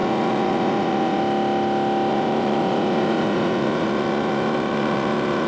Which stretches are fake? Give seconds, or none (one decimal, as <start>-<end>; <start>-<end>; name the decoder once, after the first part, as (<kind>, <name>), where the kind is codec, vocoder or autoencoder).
0.0-1.2 (vocoder, Vocos); 2.1-5.5